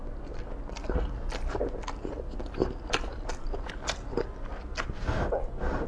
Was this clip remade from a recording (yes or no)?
no